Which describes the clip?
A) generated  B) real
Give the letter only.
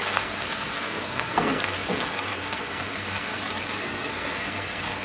A